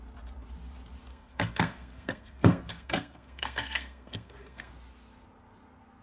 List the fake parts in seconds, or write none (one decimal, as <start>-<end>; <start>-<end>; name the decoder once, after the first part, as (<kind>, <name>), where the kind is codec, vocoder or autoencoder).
1.1-4.7 (codec, SNAC)